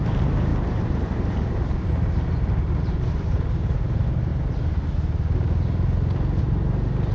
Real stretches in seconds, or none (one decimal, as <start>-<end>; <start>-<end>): 4.3-6.4